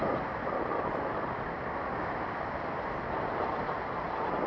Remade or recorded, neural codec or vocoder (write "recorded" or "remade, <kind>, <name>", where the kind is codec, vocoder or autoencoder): recorded